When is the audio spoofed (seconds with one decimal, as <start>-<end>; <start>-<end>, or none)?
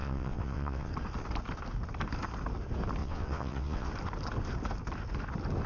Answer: 0.0-0.9; 3.0-3.9